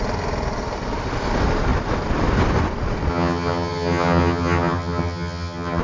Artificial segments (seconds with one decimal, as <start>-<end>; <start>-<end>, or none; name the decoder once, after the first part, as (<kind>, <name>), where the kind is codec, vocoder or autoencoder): 3.1-5.8 (vocoder, HiFi-GAN)

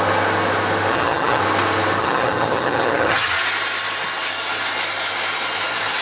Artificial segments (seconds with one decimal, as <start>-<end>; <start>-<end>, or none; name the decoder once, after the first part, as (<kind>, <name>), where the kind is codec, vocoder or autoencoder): 0.9-1.4 (vocoder, HiFi-GAN); 2.0-3.4

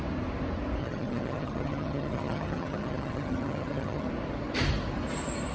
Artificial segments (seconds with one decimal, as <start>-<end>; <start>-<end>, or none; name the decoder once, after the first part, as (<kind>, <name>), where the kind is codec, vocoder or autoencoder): 0.8-4.1 (vocoder, HiFi-GAN)

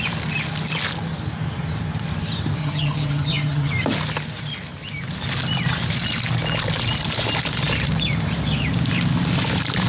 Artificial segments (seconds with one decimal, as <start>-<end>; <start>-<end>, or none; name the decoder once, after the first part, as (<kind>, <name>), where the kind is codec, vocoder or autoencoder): 2.6-3.7 (vocoder, HiFi-GAN)